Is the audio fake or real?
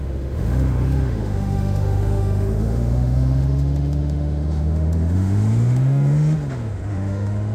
fake